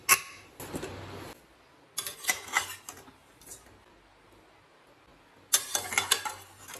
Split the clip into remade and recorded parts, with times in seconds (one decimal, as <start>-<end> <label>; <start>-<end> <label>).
0.0-6.8 recorded